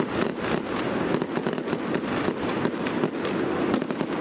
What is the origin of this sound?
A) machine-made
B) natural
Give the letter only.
B